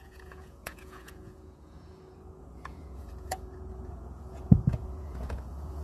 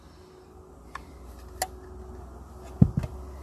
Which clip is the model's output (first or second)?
first